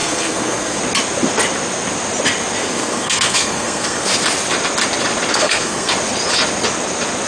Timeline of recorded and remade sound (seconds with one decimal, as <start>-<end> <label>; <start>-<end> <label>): 0.0-0.8 remade; 0.8-2.6 recorded; 2.6-4.1 remade; 4.1-5.3 recorded; 5.3-5.9 remade; 5.9-7.3 recorded